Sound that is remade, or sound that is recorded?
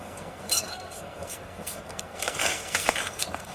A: remade